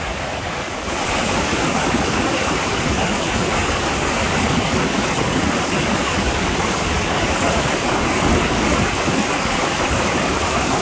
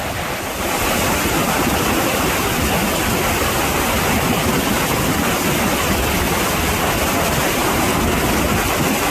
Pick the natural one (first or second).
second